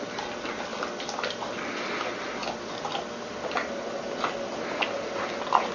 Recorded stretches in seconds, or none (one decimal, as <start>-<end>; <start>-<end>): 0.0-5.7